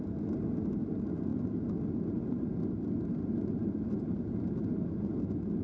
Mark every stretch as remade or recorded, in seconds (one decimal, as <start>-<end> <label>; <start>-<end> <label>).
0.0-5.6 recorded